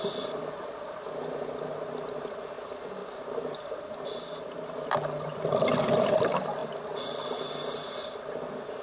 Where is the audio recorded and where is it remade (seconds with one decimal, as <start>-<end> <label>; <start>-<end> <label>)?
0.0-8.8 recorded